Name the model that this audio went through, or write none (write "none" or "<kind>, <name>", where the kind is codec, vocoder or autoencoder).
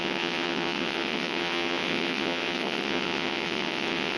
vocoder, WaveNeXt